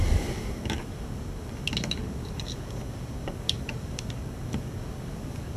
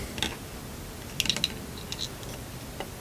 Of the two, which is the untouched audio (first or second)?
second